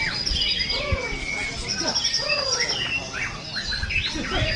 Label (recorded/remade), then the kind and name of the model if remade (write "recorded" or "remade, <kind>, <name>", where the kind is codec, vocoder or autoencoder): recorded